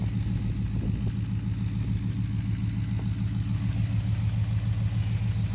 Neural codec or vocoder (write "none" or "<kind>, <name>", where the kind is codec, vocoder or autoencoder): none